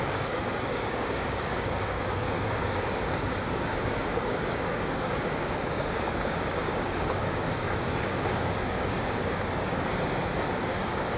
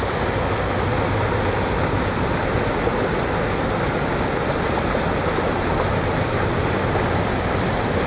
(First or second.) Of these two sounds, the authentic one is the second